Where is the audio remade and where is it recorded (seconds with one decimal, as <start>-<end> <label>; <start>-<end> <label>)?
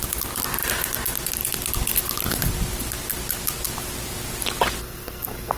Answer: 0.0-4.8 recorded; 4.8-5.6 remade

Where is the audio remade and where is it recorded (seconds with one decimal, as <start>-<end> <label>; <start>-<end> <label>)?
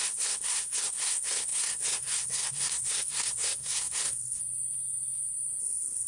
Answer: 0.0-4.4 remade; 4.4-5.6 recorded; 5.6-6.1 remade